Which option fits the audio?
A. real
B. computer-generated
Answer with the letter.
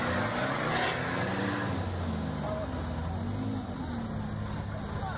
A